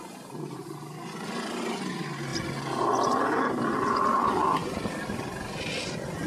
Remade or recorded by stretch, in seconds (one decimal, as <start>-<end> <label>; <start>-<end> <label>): 0.0-6.3 recorded